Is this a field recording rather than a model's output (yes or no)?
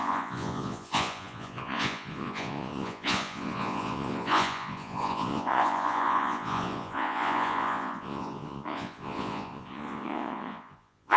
no